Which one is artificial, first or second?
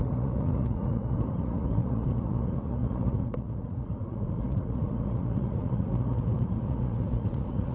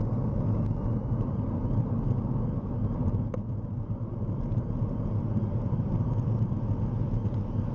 first